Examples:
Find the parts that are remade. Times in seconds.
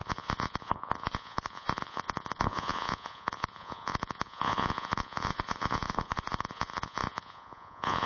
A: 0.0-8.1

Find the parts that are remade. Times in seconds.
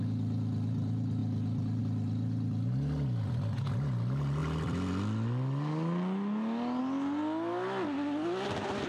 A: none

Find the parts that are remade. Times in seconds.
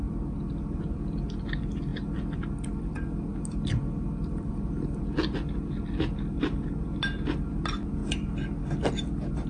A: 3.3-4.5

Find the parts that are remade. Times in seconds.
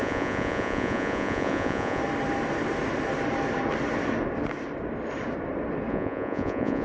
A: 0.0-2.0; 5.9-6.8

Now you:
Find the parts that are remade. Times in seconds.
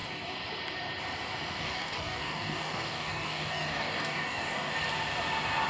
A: 1.6-4.7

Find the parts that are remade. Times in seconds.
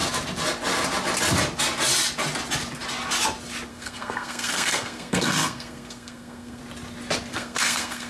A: 3.7-6.6; 7.3-8.1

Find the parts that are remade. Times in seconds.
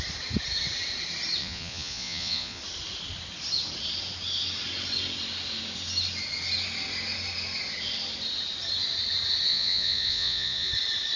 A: 1.4-2.6; 9.5-10.7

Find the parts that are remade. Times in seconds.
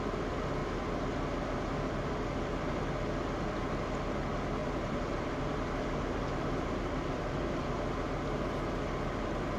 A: 4.6-7.7